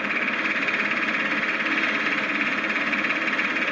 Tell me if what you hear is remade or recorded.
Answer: recorded